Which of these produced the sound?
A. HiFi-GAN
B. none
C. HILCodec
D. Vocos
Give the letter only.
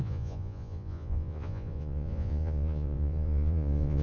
D